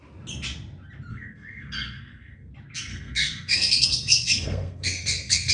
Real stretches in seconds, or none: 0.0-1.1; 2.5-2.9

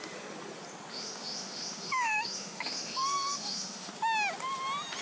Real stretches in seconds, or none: 0.0-0.9; 3.9-5.0

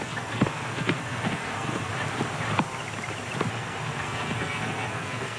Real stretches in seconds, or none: 1.9-3.5

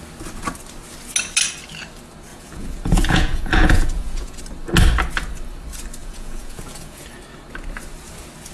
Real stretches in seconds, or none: 0.0-2.3; 4.4-6.0; 7.0-8.5

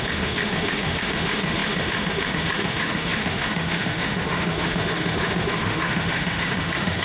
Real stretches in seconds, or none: none